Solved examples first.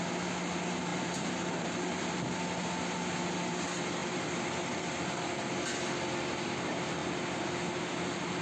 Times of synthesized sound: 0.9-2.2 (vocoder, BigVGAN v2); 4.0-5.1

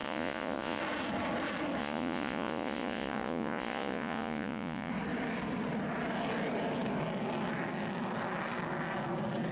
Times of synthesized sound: 0.0-0.8 (vocoder, Vocos); 1.8-4.9

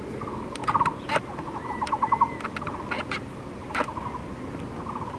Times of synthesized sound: none

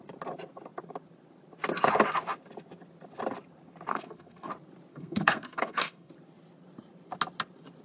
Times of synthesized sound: 3.9-4.5 (codec, SNAC); 4.9-6.1